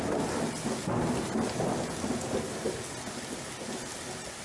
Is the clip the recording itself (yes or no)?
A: yes